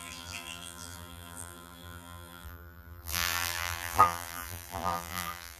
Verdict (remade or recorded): remade